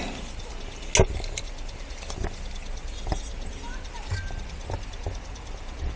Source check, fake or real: real